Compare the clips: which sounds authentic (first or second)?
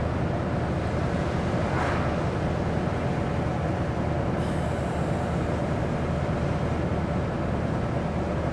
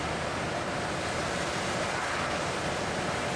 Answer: first